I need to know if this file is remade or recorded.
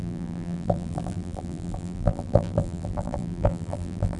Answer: remade